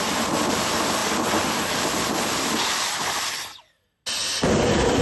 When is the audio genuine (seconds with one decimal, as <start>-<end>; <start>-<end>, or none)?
0.0-5.0